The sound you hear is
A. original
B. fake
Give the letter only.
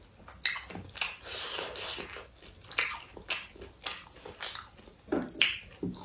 A